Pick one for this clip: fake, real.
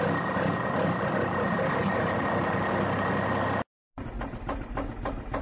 real